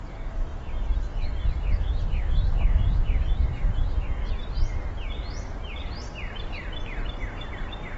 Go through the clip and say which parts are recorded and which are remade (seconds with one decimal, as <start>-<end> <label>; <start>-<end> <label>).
0.0-8.0 recorded